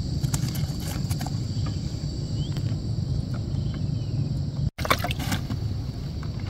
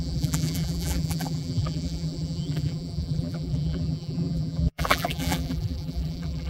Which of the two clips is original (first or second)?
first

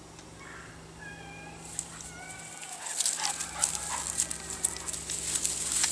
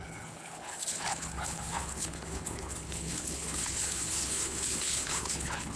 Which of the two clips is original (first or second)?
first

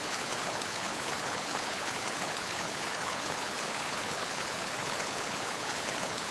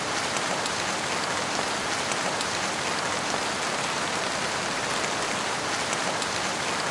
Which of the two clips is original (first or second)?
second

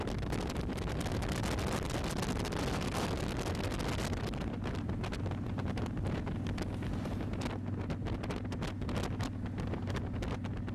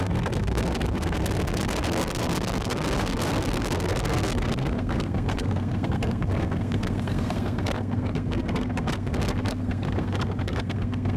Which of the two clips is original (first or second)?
first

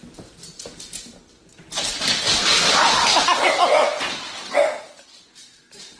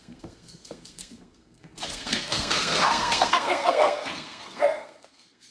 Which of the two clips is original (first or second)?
first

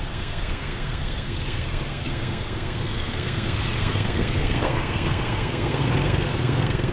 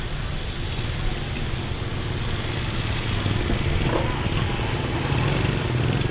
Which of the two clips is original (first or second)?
second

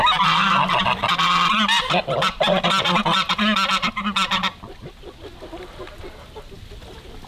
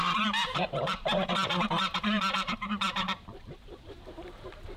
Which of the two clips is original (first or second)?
first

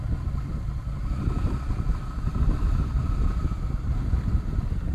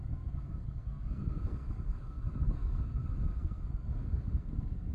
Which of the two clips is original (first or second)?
first